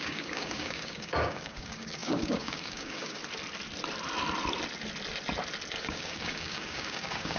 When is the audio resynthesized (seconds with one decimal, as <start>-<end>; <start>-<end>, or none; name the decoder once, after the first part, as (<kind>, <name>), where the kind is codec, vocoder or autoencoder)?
0.0-3.2 (codec, DAC); 5.8-7.4